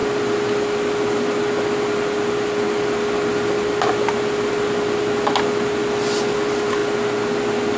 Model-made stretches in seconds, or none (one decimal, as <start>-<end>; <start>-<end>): none